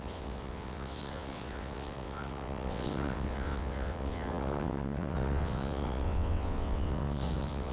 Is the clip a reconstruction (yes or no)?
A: yes